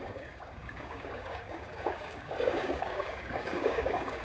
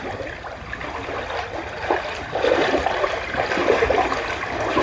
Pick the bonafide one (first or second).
second